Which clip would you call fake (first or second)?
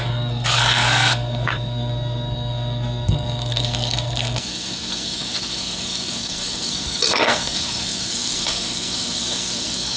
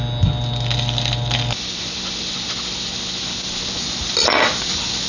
first